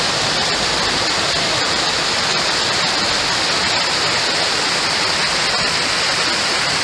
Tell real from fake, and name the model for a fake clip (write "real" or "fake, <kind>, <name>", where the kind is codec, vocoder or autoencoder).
real